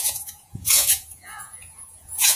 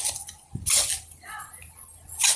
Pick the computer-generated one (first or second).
first